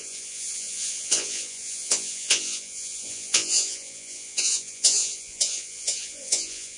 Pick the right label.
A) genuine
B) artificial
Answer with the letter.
B